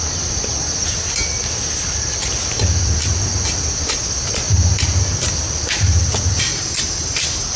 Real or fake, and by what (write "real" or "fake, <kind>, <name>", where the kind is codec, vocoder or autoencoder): real